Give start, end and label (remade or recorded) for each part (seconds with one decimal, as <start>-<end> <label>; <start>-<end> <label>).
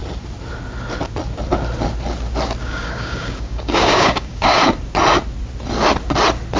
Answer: 0.0-2.6 recorded; 2.6-4.6 remade; 4.6-6.6 recorded